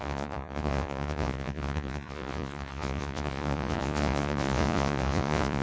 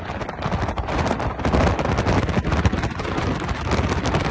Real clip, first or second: second